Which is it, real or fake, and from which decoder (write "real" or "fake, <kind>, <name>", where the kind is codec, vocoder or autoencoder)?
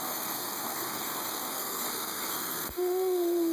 fake, codec, SNAC